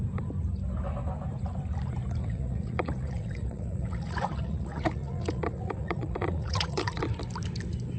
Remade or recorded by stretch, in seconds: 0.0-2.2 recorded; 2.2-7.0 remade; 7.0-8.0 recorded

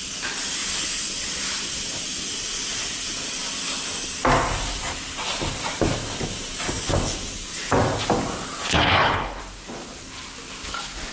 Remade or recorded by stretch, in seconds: 0.0-8.7 recorded; 8.7-9.4 remade; 9.4-11.1 recorded

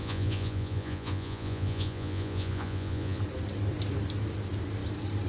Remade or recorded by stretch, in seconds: 0.0-3.2 remade; 3.2-5.3 recorded

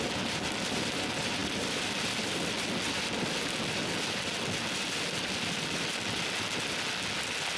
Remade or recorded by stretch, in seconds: 0.0-7.6 recorded

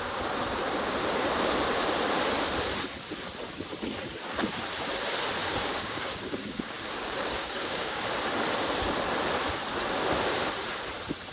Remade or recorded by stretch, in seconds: 0.0-5.4 recorded; 5.4-8.0 remade; 8.0-11.3 recorded

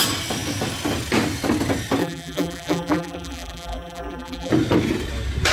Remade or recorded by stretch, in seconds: 0.0-2.0 recorded; 2.0-4.5 remade; 4.5-5.5 recorded

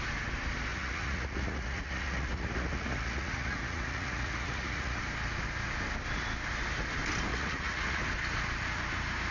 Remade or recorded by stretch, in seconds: 0.0-0.7 recorded; 0.7-5.0 remade; 5.0-7.3 recorded; 7.3-8.0 remade; 8.0-9.3 recorded